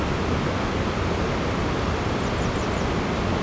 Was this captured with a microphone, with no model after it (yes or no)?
yes